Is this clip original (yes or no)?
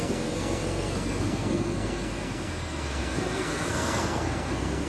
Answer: no